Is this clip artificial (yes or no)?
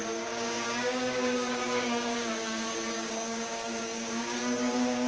yes